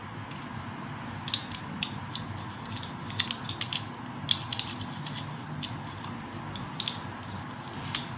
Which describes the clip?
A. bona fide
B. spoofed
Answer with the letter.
A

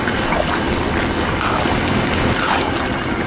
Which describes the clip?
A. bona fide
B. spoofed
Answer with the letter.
A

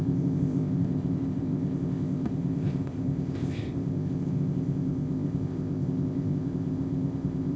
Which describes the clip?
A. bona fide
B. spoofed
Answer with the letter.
B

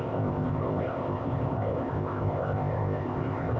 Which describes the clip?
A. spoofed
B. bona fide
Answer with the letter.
A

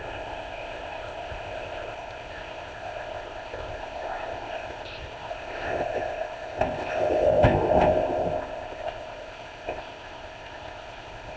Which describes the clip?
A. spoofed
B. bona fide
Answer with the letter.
A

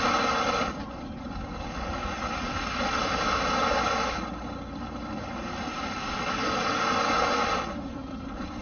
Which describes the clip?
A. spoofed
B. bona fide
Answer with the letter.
B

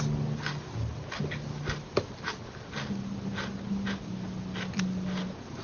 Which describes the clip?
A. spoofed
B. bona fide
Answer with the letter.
B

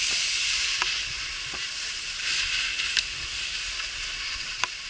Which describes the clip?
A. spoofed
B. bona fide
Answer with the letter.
B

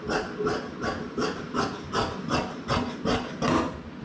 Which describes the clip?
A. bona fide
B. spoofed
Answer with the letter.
A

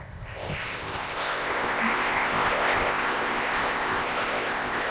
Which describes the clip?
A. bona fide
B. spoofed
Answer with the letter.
B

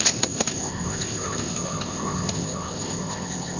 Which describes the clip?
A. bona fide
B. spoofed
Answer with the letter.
B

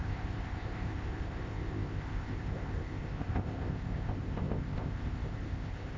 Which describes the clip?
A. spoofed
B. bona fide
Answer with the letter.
A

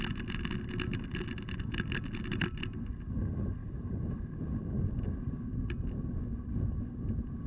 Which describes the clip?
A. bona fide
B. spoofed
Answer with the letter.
A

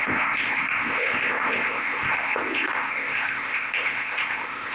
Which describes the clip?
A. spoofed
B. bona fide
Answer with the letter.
A